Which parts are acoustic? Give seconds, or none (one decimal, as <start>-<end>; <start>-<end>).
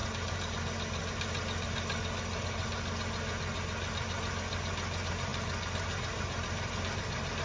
0.0-7.4